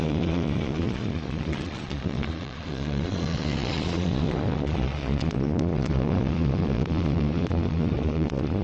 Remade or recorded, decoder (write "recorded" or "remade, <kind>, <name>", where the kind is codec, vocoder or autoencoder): remade, vocoder, Vocos